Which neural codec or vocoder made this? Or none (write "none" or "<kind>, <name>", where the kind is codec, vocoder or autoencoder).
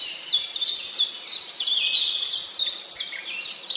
none